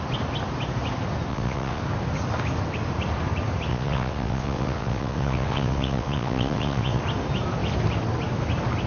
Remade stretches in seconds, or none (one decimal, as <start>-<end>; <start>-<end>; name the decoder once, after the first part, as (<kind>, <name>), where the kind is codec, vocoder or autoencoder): 1.3-1.8 (vocoder, WaveNeXt); 3.7-7.0